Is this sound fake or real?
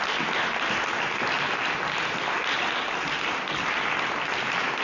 real